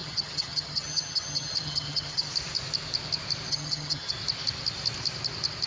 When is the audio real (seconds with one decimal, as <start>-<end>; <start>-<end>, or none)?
2.3-3.5; 4.1-5.7